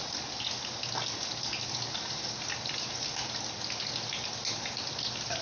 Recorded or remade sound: recorded